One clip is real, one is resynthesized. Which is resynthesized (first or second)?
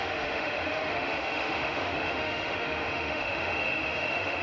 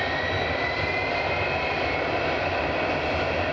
first